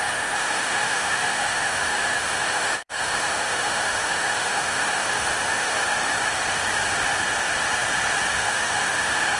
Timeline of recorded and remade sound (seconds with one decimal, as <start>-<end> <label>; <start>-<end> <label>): 0.0-5.8 remade; 5.8-8.3 recorded; 8.3-9.4 remade